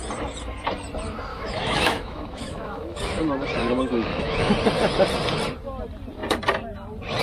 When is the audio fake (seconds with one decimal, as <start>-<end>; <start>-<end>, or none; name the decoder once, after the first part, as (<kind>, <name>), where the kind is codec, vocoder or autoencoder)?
1.3-3.2 (autoencoder, DAC-VAE); 3.6-4.5